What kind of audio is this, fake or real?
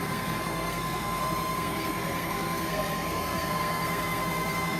fake